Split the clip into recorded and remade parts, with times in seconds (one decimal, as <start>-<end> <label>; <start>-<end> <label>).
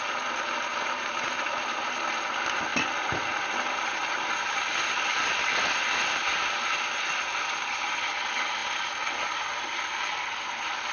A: 0.0-10.9 recorded